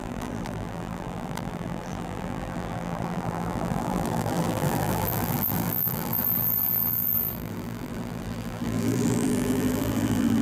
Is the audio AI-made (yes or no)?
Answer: yes